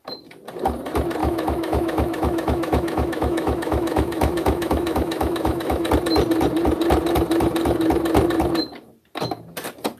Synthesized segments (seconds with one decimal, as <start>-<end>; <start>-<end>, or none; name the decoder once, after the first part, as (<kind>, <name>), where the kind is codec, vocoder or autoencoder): 1.2-5.9 (autoencoder, DAC-VAE)